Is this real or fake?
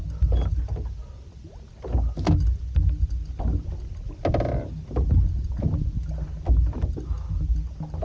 real